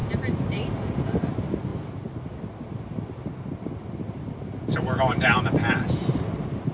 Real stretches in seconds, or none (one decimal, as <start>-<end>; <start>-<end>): 0.0-6.7